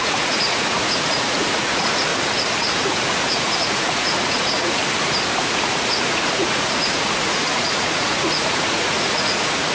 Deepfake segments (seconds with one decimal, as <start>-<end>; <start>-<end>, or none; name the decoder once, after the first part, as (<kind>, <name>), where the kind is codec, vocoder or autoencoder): 0.0-2.1 (vocoder, Vocos); 2.8-4.8; 5.4-9.7